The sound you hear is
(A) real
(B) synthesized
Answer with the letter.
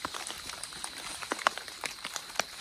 B